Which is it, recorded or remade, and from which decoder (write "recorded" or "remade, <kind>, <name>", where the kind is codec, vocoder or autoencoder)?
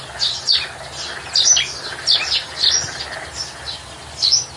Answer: recorded